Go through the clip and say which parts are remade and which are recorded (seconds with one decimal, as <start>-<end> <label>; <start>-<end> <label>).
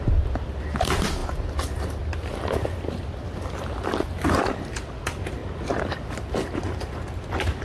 0.0-7.6 recorded